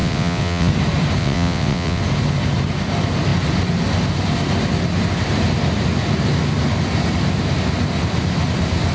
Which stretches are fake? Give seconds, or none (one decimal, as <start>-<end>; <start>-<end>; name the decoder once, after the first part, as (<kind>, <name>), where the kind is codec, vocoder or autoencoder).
0.0-0.7 (vocoder, WaveNeXt); 1.2-2.0